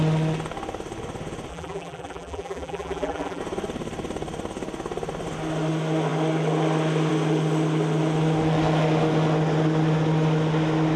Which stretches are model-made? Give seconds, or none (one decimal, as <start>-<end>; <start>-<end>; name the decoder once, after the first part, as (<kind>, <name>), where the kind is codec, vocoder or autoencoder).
1.5-3.4 (vocoder, BigVGAN v2)